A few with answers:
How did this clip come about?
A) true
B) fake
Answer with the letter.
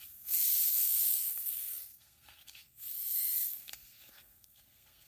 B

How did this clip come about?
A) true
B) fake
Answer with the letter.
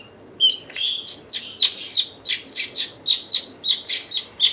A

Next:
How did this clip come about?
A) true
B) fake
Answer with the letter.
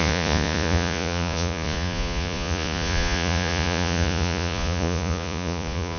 B